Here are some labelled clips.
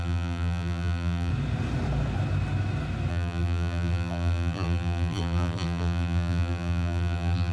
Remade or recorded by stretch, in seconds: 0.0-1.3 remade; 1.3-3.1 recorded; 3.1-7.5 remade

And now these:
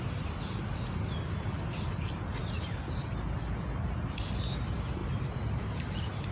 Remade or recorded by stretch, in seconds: 0.0-2.4 recorded; 2.4-3.1 remade; 3.1-5.0 recorded; 5.0-6.3 remade

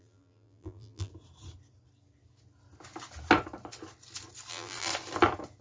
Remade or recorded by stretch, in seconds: 0.0-1.1 remade; 1.1-4.5 recorded; 4.5-4.9 remade; 4.9-5.6 recorded

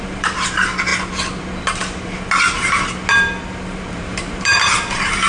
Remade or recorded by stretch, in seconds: 0.0-0.9 remade; 0.9-3.9 recorded; 3.9-5.3 remade

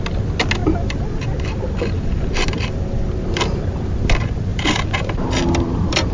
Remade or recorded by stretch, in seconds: 0.0-0.6 recorded; 0.6-3.1 remade; 3.1-4.5 recorded; 4.5-6.1 remade

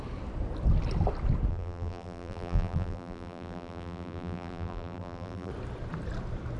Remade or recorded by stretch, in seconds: 0.0-1.5 recorded; 1.5-5.5 remade; 5.5-6.6 recorded

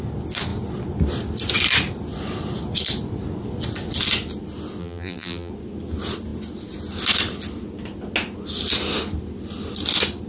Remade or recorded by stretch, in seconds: 0.0-4.8 recorded; 4.8-5.5 remade; 5.5-10.3 recorded

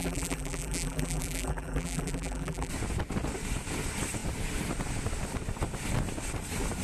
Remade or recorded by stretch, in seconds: 0.0-2.7 remade; 2.7-6.8 recorded